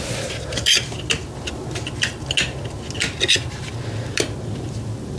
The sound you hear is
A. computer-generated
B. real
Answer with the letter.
B